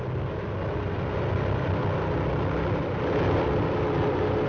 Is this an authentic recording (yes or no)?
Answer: yes